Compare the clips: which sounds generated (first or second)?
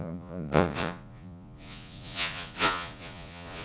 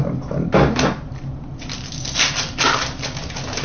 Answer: first